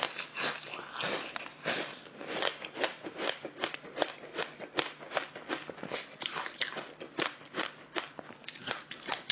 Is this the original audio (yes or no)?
yes